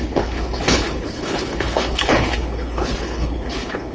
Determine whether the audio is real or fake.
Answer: fake